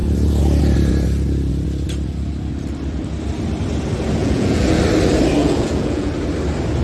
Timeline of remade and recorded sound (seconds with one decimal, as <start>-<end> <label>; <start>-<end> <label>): 0.0-4.2 recorded; 4.2-4.8 remade; 4.8-5.4 recorded; 5.4-6.1 remade; 6.1-6.8 recorded

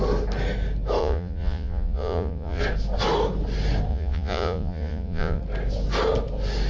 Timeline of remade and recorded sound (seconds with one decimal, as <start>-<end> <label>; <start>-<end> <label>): 0.0-1.0 recorded; 1.0-2.6 remade; 2.6-3.9 recorded; 3.9-5.4 remade; 5.4-6.7 recorded

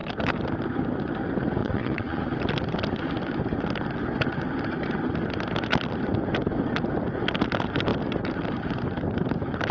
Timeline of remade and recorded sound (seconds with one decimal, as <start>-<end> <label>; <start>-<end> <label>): 0.0-1.6 recorded; 1.6-2.2 remade; 2.2-9.7 recorded

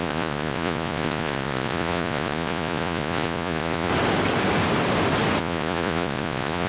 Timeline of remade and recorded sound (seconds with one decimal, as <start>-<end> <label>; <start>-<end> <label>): 0.0-3.9 remade; 3.9-5.4 recorded; 5.4-6.7 remade